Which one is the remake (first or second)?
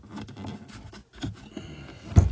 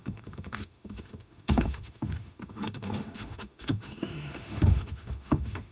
second